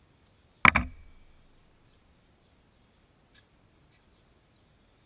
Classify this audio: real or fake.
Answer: real